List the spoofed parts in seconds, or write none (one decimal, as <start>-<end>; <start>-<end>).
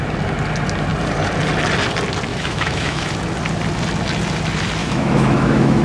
2.3-3.1; 4.8-5.8